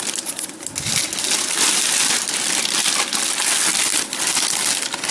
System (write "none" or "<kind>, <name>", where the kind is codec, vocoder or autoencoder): none